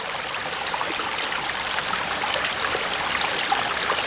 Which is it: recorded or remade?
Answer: recorded